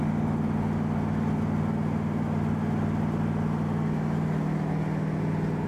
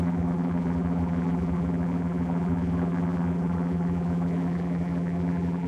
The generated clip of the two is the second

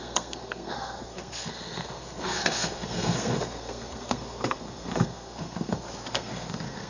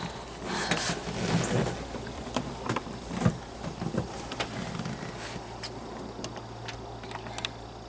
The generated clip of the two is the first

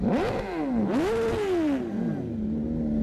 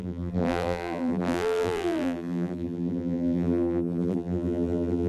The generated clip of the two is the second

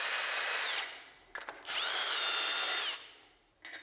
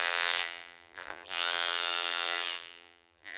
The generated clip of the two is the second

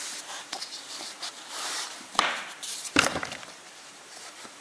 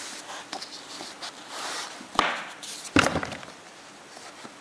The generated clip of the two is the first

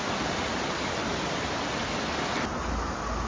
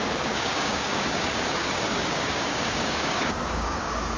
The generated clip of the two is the second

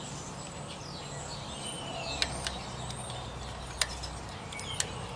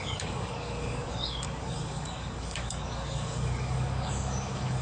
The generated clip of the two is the second